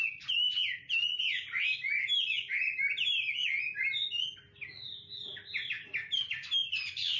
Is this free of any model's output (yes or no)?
yes